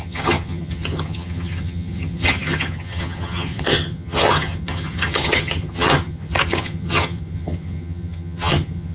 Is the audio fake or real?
fake